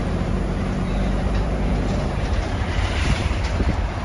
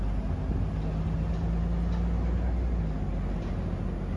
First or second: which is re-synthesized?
first